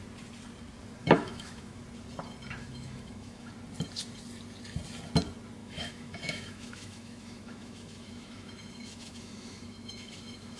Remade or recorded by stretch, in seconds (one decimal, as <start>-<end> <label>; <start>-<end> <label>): 0.0-1.0 recorded; 1.0-1.8 remade; 1.8-2.6 recorded; 2.6-3.5 remade; 3.5-5.6 recorded; 5.6-10.6 remade